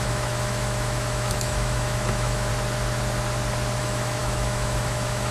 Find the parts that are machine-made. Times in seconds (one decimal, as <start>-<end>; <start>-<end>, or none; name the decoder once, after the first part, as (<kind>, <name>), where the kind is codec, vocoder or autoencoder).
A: 0.0-2.5 (autoencoder, DAC-VAE); 3.8-5.3